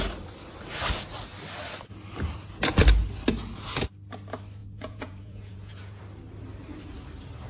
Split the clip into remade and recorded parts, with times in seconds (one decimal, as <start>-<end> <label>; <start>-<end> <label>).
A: 0.0-4.6 recorded; 4.6-6.0 remade; 6.0-7.5 recorded